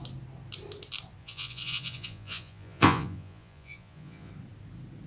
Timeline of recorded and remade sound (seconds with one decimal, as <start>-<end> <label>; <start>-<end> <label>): 0.0-1.2 recorded; 1.2-4.3 remade; 4.3-5.1 recorded